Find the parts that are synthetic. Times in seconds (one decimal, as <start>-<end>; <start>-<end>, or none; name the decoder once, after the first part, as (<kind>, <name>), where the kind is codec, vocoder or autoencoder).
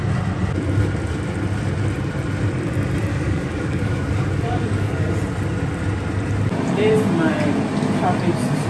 3.1-5.1 (codec, DAC)